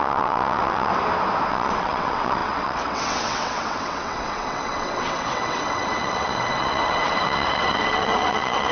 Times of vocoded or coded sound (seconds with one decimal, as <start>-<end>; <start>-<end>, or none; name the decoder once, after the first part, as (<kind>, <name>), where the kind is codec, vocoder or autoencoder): 0.0-0.9 (vocoder, WaveNeXt); 1.5-8.7

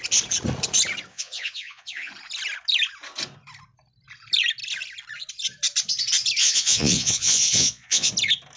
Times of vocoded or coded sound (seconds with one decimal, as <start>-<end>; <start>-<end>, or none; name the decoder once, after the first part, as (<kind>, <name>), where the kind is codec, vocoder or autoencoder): 1.1-2.1 (vocoder, Vocos); 6.4-8.1

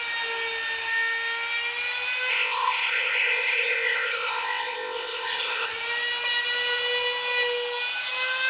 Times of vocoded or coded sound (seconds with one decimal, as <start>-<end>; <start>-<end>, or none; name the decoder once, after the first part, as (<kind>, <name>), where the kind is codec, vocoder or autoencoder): 2.3-5.7 (codec, ZipCodec)

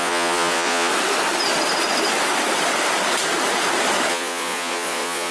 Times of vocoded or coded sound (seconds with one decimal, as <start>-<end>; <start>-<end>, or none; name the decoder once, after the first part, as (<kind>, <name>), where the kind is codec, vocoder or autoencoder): 0.0-0.9 (vocoder, Vocos); 4.1-5.3

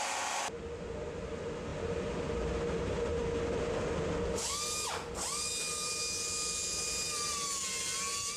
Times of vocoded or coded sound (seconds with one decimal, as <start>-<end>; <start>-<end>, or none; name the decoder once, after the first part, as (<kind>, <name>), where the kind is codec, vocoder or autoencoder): none